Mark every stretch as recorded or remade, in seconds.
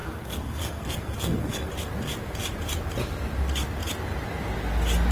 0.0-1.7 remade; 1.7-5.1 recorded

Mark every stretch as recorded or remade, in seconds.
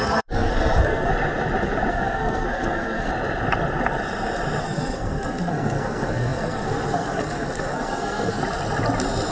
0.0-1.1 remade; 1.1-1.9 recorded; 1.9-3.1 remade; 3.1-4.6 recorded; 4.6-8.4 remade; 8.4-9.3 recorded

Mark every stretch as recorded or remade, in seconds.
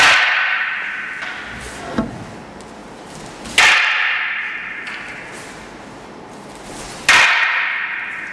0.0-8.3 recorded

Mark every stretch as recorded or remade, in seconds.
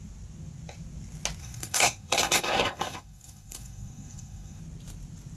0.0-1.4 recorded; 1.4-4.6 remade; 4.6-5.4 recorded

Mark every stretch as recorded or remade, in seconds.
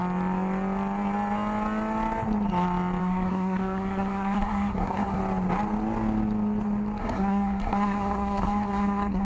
0.0-3.0 recorded; 3.0-5.2 remade; 5.2-7.0 recorded; 7.0-9.2 remade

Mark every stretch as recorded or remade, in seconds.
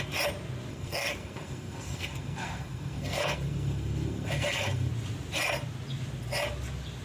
0.0-0.7 recorded; 0.7-4.9 remade; 4.9-7.0 recorded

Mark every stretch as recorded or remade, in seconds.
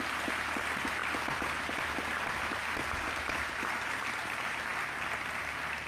0.0-5.9 recorded